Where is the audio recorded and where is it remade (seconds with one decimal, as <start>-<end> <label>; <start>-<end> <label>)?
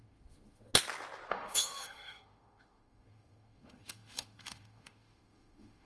0.0-0.7 remade; 0.7-1.3 recorded; 1.3-5.9 remade